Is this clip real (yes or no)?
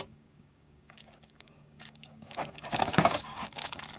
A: no